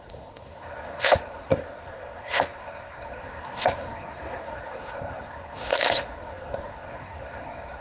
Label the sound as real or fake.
fake